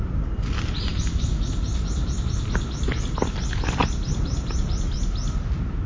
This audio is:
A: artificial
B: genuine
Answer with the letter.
B